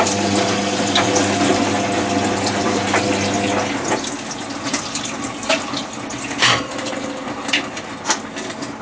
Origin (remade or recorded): recorded